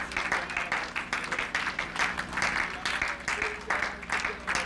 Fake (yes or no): no